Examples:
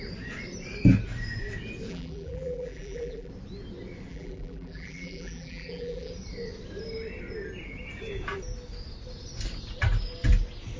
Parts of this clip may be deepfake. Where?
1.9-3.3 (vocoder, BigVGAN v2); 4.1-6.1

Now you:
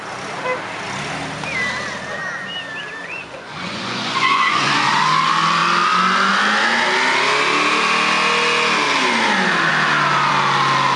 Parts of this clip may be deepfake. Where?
3.0-5.0 (vocoder, Vocos)

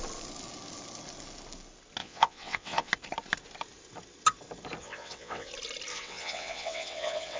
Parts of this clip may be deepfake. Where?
2.0-2.9 (vocoder, WaveNeXt); 4.8-5.5; 5.9-7.4

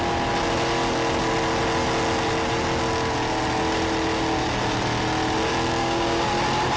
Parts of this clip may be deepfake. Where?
5.8-6.3 (codec, DAC)

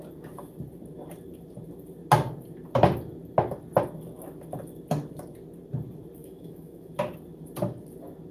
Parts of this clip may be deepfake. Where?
6.2-6.9 (autoencoder, DAC-VAE)